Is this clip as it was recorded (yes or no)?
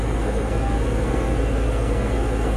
no